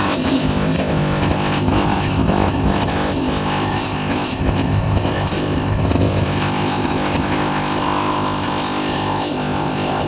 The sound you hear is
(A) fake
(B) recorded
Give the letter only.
A